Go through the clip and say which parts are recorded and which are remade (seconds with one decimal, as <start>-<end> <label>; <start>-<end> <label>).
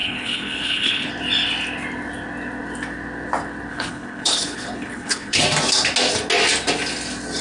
0.0-1.1 remade; 1.1-3.7 recorded; 3.7-5.4 remade; 5.4-7.4 recorded